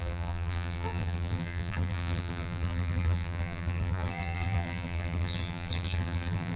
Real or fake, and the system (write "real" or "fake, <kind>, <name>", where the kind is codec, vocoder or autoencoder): fake, vocoder, BigVGAN v2